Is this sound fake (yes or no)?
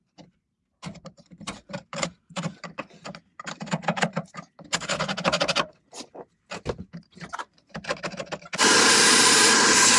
yes